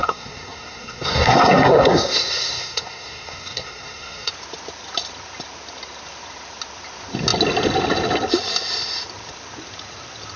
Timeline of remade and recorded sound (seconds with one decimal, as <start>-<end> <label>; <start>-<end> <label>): 0.0-4.3 remade; 4.3-10.4 recorded